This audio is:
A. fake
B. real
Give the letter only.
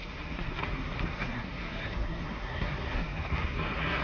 A